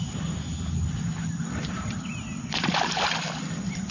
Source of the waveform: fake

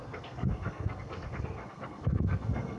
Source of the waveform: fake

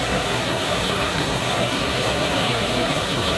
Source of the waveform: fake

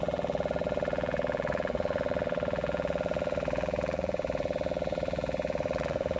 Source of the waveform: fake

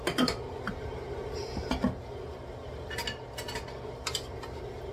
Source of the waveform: real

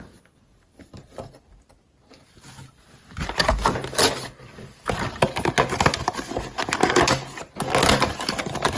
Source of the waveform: real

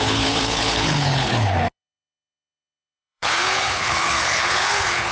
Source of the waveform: fake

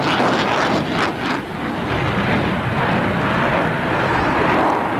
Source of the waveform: real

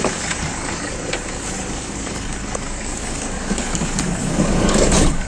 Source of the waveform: fake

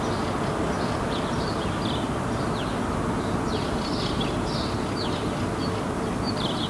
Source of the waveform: real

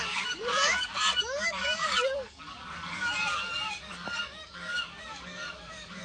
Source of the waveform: fake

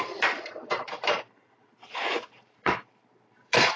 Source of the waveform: fake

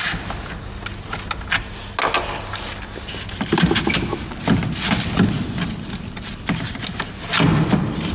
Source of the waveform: real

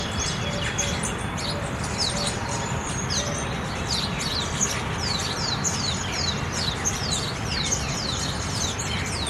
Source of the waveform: real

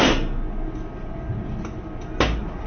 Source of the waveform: real